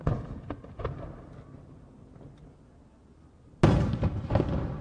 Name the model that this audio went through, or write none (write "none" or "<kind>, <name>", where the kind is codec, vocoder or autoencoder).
none